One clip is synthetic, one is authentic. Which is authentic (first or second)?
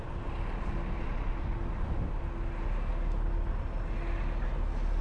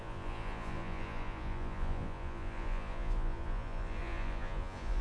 first